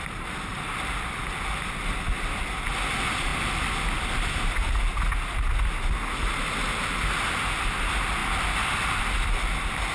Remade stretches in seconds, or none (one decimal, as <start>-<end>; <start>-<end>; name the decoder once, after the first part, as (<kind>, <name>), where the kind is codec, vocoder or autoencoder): 0.5-1.2 (vocoder, BigVGAN v2)

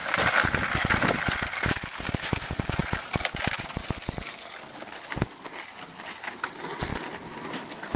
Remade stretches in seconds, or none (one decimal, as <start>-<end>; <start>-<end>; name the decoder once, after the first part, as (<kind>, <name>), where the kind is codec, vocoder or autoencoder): 6.9-7.6 (vocoder, BigVGAN v2)

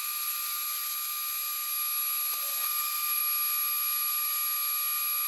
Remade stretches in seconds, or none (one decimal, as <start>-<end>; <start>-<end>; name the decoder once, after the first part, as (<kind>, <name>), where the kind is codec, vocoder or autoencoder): 0.0-0.6 (vocoder, BigVGAN v2); 2.6-3.2

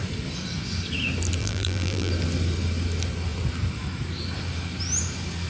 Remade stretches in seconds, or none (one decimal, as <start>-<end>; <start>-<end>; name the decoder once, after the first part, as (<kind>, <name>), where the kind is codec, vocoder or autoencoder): 1.4-2.1 (vocoder, BigVGAN v2)

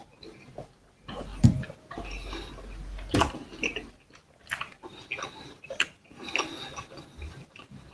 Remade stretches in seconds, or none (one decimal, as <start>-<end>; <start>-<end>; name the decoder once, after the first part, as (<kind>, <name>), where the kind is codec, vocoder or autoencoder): none